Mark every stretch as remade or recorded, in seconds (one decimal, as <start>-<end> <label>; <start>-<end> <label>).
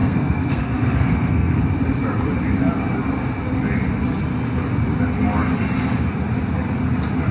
0.0-1.6 remade; 1.6-7.3 recorded